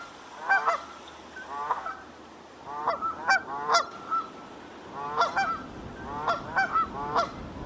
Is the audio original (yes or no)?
yes